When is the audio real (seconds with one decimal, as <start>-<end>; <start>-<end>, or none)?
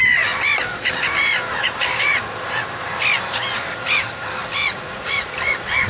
0.0-4.6; 5.3-5.9